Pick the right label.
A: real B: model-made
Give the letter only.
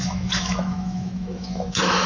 B